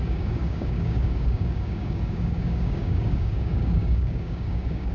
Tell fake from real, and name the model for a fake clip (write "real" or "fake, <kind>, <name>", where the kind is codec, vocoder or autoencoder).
fake, codec, DAC